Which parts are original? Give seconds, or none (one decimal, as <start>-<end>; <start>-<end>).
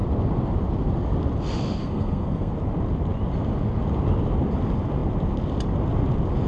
0.0-1.8; 2.5-6.5